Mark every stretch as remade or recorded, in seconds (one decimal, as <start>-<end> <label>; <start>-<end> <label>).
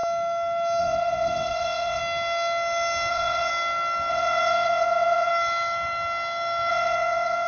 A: 0.0-0.8 recorded; 0.8-2.0 remade; 2.0-3.1 recorded; 3.1-3.5 remade; 3.5-4.1 recorded; 4.1-5.3 remade; 5.3-6.7 recorded; 6.7-7.5 remade